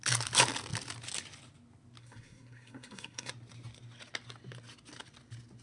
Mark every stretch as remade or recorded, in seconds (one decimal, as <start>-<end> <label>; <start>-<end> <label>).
0.0-2.0 recorded; 2.0-3.3 remade; 3.3-5.6 recorded

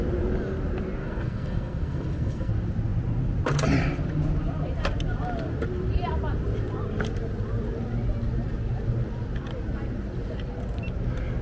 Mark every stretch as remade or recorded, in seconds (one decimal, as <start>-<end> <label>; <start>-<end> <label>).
0.0-1.0 recorded; 1.0-2.5 remade; 2.5-11.4 recorded